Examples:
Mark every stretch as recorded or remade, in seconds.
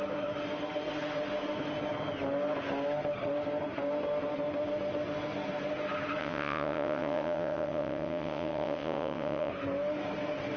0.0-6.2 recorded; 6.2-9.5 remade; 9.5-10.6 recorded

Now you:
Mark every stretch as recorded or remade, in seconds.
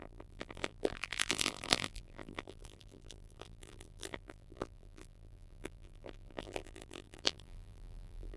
0.0-8.4 remade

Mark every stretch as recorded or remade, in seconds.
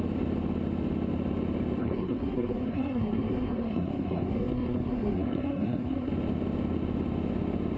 0.0-1.8 recorded; 1.8-6.1 remade; 6.1-7.8 recorded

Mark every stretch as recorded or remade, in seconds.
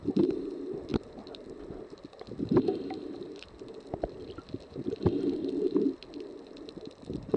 0.0-7.4 recorded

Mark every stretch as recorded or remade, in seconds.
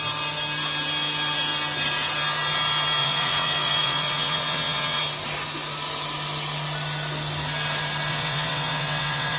0.0-3.0 recorded; 3.0-5.0 remade; 5.0-8.1 recorded; 8.1-9.4 remade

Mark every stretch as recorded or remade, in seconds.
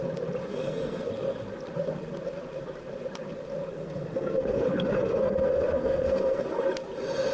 0.0-0.5 recorded; 0.5-1.1 remade; 1.1-3.7 recorded; 3.7-6.4 remade; 6.4-7.3 recorded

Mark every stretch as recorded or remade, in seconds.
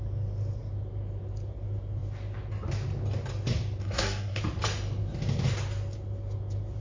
0.0-3.8 recorded; 3.8-4.4 remade; 4.4-6.8 recorded